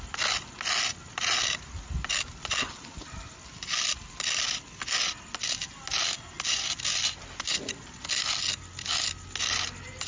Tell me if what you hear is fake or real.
real